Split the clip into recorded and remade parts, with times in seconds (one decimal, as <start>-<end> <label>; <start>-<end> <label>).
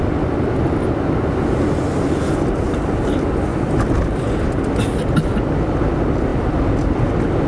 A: 0.0-7.5 recorded